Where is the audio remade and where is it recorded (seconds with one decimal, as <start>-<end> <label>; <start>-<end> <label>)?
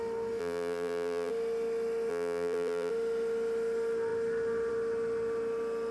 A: 0.0-0.4 recorded; 0.4-1.3 remade; 1.3-2.1 recorded; 2.1-2.9 remade; 2.9-5.9 recorded